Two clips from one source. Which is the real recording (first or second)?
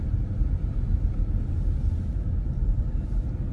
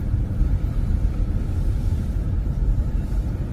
first